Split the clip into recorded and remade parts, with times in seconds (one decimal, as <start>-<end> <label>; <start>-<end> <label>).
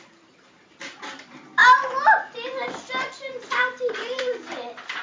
0.0-1.6 remade; 1.6-2.2 recorded; 2.2-5.0 remade